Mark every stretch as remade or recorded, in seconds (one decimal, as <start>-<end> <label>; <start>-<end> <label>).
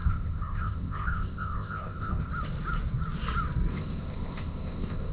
0.0-2.3 remade; 2.3-3.7 recorded; 3.7-5.1 remade